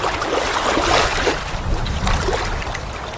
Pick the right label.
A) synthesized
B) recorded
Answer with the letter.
B